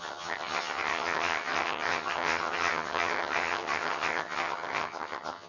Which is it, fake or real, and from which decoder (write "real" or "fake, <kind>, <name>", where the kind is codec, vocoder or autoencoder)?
fake, vocoder, HiFi-GAN